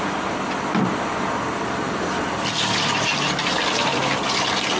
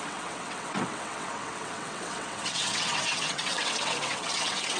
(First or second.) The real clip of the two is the first